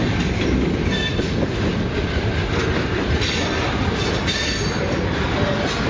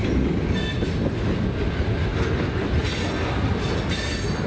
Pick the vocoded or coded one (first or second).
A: first